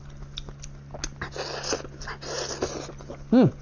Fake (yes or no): no